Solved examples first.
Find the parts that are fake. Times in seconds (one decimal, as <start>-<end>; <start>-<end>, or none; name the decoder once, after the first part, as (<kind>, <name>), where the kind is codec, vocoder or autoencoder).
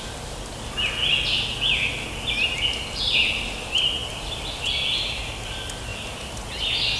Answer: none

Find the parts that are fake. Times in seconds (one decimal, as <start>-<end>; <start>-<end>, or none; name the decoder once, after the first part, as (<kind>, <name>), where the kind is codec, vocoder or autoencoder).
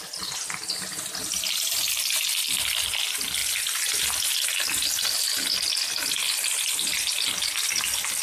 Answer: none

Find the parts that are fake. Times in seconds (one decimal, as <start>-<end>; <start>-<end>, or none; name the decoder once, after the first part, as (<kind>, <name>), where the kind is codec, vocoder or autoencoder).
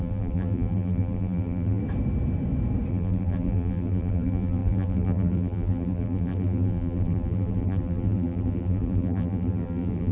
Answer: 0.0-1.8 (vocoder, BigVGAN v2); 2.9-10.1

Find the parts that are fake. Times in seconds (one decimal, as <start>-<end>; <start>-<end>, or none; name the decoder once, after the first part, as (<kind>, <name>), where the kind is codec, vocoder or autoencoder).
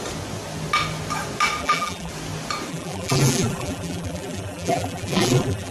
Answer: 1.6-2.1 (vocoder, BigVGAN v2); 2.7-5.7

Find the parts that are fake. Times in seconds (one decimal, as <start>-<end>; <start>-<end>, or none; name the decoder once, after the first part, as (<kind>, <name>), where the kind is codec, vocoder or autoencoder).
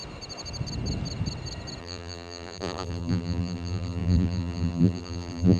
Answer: 1.8-5.6 (vocoder, BigVGAN v2)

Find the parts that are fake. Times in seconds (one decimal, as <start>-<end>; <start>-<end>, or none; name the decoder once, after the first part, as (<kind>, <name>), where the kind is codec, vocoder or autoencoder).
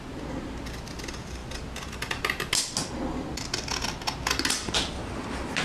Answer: none